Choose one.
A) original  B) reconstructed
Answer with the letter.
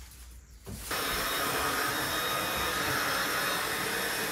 A